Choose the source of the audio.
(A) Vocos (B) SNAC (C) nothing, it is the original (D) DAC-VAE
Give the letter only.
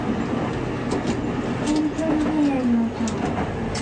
C